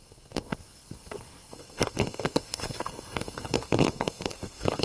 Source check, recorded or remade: remade